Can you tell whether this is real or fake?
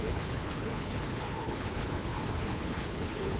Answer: fake